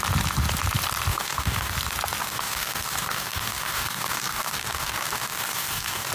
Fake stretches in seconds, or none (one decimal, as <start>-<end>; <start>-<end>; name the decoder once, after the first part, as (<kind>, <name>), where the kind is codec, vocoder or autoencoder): 1.1-1.7 (codec, DAC); 2.2-6.1